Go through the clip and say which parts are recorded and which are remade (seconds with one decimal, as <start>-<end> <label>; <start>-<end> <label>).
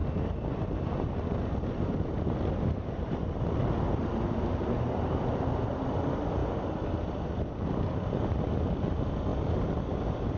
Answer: 0.0-10.4 recorded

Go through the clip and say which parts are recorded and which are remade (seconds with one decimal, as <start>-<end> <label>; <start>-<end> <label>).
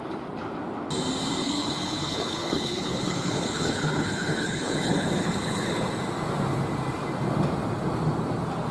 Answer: 0.0-1.4 recorded; 1.4-5.9 remade; 5.9-8.7 recorded